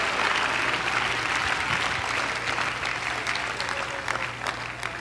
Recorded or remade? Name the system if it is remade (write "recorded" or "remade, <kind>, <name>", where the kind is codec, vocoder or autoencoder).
recorded